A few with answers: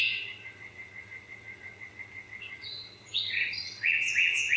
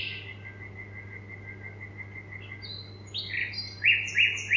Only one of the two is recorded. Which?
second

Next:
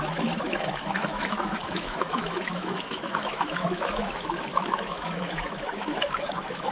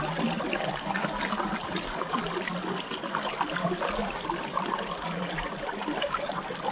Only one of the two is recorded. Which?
second